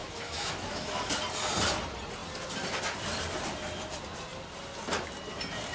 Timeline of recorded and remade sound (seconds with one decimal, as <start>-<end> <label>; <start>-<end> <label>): 0.0-1.1 remade; 1.1-5.7 recorded